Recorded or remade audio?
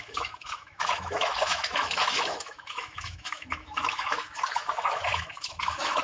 remade